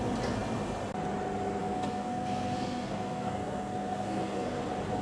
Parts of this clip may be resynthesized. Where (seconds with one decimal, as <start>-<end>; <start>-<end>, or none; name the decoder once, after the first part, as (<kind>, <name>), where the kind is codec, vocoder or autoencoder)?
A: 1.6-4.6 (codec, SNAC)